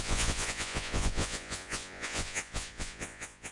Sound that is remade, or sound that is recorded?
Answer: remade